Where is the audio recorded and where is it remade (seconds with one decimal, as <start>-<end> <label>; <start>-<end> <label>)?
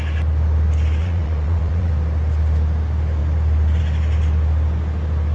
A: 0.0-1.0 recorded; 1.0-1.9 remade; 1.9-5.3 recorded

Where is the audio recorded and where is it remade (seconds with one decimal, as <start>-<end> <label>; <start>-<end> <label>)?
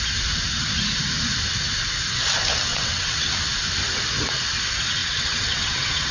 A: 0.0-2.7 recorded; 2.7-3.3 remade; 3.3-5.0 recorded; 5.0-6.1 remade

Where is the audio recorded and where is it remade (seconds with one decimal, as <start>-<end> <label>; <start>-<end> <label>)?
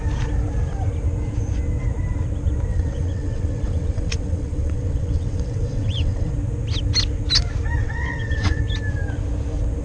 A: 0.0-2.7 recorded; 2.7-6.3 remade; 6.3-7.8 recorded; 7.8-8.6 remade; 8.6-9.8 recorded